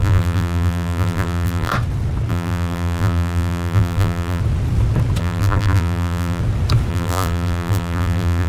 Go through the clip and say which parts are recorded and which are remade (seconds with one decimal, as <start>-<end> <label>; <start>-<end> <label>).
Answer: 0.0-1.7 remade; 1.7-2.3 recorded; 2.3-4.4 remade; 4.4-5.2 recorded; 5.2-6.4 remade; 6.4-6.9 recorded; 6.9-8.5 remade